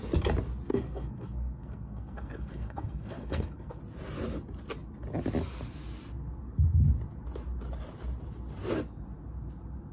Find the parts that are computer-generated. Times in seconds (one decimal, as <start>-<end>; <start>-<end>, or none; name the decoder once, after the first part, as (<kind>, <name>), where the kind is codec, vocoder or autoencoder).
0.7-3.8 (codec, SNAC)